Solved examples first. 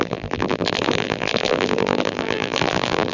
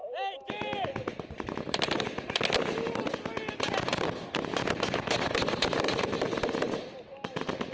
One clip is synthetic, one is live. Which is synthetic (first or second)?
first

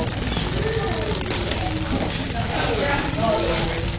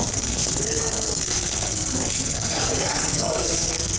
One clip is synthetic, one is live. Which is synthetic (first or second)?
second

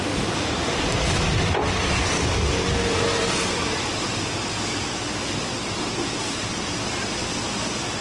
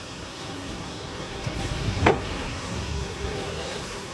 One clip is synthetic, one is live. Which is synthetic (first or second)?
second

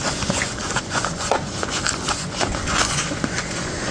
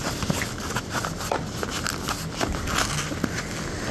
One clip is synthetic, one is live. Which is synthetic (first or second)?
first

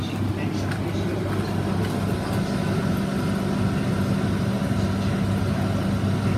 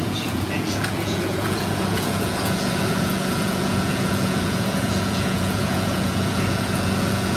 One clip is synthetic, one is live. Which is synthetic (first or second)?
second